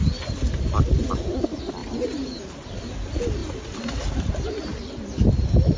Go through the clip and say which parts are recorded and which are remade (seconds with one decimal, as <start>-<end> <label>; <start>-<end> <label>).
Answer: 0.0-5.8 recorded